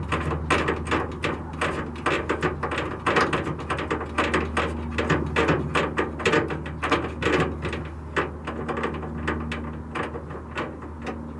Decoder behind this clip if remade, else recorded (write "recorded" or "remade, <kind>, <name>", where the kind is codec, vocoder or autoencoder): recorded